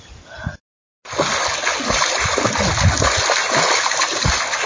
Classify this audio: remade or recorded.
recorded